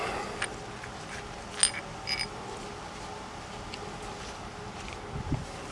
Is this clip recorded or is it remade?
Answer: recorded